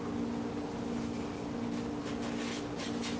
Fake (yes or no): no